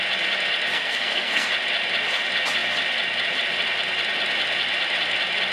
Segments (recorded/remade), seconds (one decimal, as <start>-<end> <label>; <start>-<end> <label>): 0.0-0.7 recorded; 0.7-1.5 remade; 1.5-5.5 recorded